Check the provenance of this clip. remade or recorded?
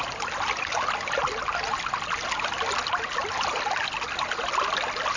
recorded